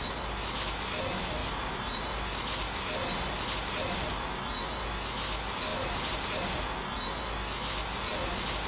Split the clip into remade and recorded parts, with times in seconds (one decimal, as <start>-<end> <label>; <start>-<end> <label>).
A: 0.0-5.7 recorded; 5.7-6.4 remade; 6.4-8.7 recorded